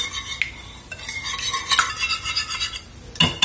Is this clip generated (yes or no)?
no